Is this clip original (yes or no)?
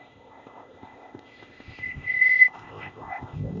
no